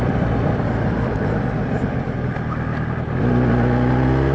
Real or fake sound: real